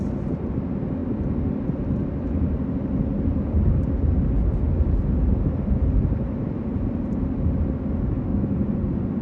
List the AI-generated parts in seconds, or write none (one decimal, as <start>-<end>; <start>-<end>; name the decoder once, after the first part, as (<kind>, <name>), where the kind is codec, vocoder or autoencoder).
none

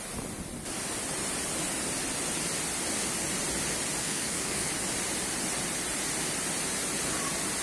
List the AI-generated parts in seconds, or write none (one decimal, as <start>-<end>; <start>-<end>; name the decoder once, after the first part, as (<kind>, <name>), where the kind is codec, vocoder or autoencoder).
4.0-4.7 (codec, SNAC)

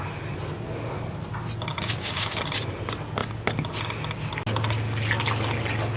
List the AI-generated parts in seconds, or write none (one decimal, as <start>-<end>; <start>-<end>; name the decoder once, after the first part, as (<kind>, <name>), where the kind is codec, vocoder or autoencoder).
1.7-2.4 (codec, DAC)